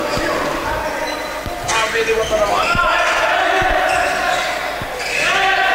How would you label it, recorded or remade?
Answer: recorded